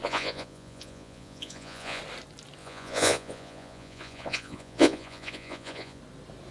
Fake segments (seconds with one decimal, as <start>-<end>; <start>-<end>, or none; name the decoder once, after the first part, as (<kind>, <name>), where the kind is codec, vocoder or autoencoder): 0.0-2.0 (vocoder, Vocos); 2.6-6.0